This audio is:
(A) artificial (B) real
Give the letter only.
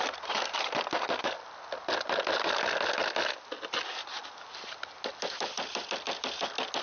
B